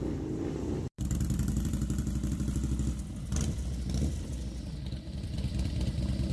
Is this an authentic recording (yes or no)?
no